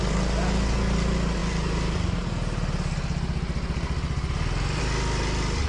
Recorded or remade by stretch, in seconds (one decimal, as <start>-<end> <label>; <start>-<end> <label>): 0.0-5.7 recorded